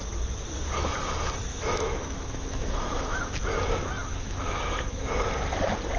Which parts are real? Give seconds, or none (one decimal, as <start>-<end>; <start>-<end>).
0.0-1.5; 3.3-4.1; 5.1-6.0